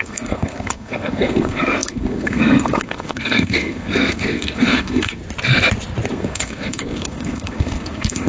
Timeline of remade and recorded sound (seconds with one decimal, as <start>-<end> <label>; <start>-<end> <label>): 0.0-5.2 remade; 5.2-6.1 recorded; 6.1-8.3 remade